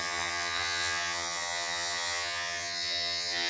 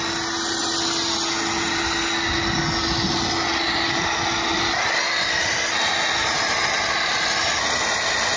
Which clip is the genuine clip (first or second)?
second